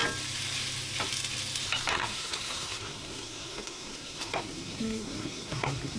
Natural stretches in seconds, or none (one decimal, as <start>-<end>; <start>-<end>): 0.0-1.9